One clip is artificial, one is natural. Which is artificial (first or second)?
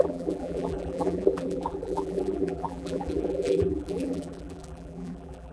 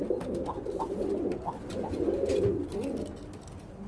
first